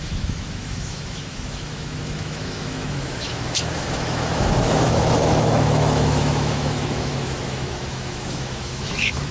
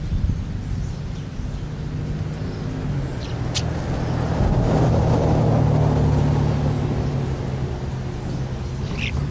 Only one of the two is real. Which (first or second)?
second